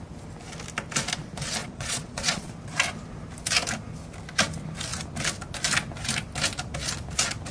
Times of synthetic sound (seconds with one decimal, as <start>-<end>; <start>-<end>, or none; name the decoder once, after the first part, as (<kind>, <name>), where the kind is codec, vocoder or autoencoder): 1.6-2.5 (vocoder, Vocos)